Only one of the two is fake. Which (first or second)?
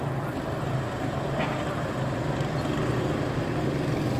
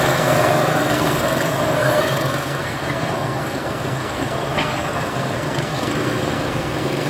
second